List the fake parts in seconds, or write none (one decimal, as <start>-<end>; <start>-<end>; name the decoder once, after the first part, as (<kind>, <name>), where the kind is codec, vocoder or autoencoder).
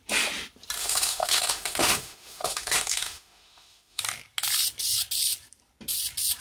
0.8-4.0 (autoencoder, DAC-VAE)